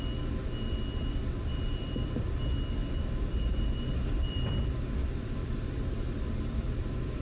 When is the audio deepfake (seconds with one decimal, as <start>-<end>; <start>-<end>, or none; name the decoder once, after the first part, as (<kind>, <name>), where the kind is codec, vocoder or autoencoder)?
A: 0.9-2.4 (vocoder, BigVGAN v2); 2.8-7.2